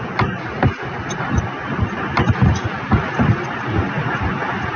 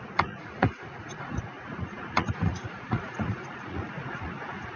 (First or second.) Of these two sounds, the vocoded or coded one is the second